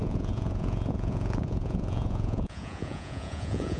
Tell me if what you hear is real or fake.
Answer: fake